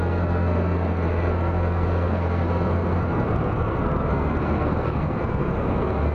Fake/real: fake